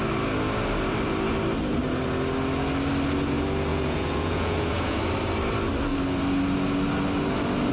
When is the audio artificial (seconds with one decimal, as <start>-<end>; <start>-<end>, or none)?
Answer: 3.7-5.0

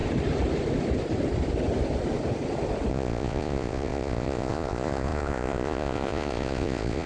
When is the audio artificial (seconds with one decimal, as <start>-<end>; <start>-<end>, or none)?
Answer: 2.9-7.1

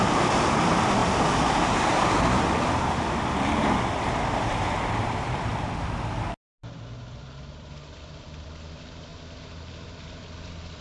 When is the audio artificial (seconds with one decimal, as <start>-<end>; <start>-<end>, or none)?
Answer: 0.0-1.0; 3.9-5.5; 7.5-9.1; 9.8-10.8

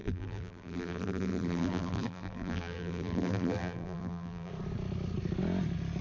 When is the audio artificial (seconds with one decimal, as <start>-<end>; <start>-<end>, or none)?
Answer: 0.0-4.5

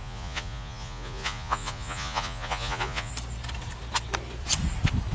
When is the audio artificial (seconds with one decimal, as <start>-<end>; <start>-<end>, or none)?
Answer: 0.0-3.1

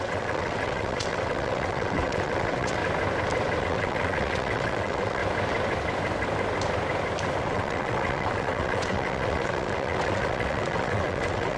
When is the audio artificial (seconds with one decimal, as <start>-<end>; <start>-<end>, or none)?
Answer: 0.0-2.8; 3.6-5.2; 7.4-11.6

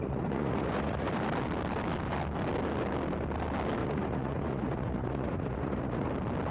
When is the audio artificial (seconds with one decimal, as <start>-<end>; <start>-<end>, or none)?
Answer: 0.0-1.1; 3.8-6.1